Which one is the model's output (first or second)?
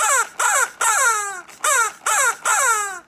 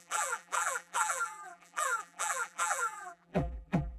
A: second